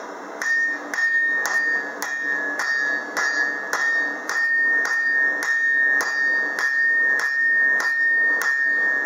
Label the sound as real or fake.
real